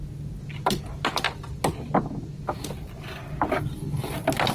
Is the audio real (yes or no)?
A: yes